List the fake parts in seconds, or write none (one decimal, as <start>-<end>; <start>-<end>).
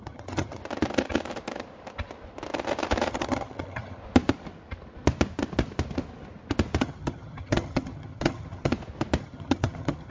0.0-0.6; 3.1-4.0; 6.8-8.7; 9.2-10.1